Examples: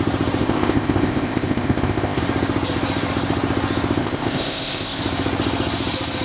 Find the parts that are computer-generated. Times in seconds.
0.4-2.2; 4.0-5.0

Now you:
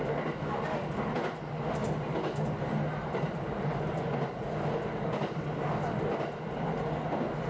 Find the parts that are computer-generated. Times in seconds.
none

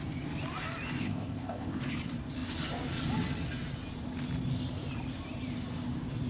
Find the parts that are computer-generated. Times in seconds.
1.0-1.8

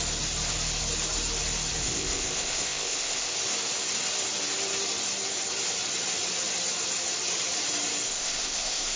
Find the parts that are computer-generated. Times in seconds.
1.8-3.3; 8.1-9.0

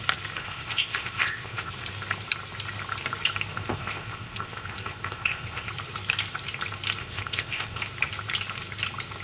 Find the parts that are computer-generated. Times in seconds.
0.4-1.7; 3.5-5.7; 7.0-7.8

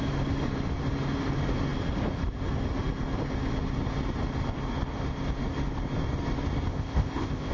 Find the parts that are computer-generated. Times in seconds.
6.7-7.5